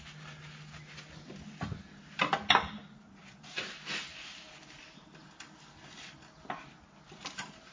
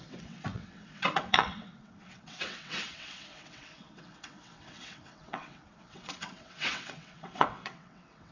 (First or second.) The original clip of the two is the first